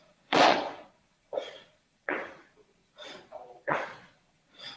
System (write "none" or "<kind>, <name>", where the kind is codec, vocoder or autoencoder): vocoder, Vocos